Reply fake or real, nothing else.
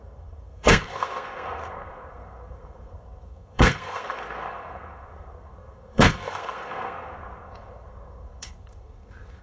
fake